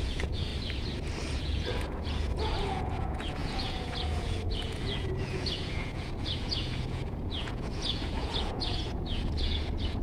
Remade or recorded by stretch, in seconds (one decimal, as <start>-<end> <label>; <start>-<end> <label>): 0.0-0.5 remade; 0.5-1.4 recorded; 1.4-10.0 remade